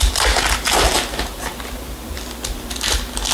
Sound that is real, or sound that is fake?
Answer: real